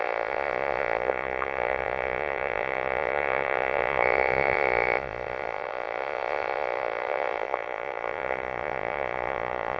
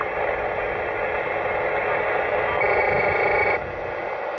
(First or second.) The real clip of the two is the second